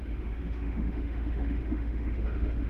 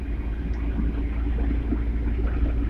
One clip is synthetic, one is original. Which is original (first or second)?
second